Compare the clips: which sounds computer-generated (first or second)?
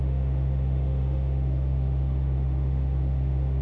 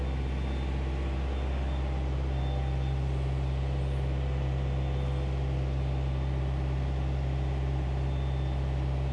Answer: first